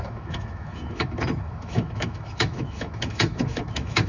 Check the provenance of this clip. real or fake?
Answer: fake